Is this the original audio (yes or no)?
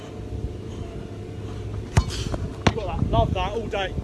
yes